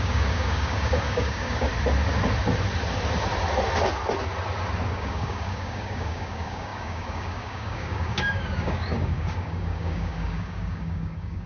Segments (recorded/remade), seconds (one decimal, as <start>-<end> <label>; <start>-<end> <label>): 0.0-1.7 remade; 1.7-4.9 recorded; 4.9-11.5 remade